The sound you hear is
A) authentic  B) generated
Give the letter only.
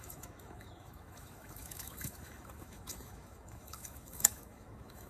B